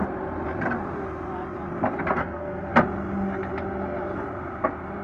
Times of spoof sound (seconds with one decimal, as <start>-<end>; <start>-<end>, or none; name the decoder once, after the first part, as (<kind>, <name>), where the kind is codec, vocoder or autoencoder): 2.2-2.7 (codec, SNAC)